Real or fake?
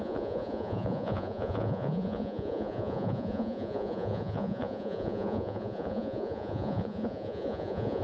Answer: fake